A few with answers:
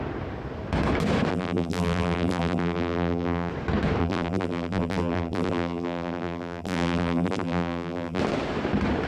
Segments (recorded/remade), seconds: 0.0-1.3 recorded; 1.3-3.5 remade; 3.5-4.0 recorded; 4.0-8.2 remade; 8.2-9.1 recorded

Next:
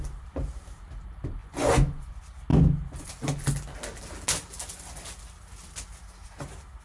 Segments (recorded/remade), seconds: 0.0-1.4 recorded; 1.4-2.1 remade; 2.1-6.8 recorded